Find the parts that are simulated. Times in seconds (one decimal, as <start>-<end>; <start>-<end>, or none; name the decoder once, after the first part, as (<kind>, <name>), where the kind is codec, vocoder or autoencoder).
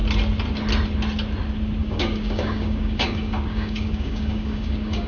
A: 1.8-5.1 (codec, DAC)